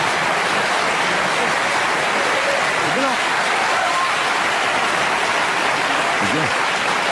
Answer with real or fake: fake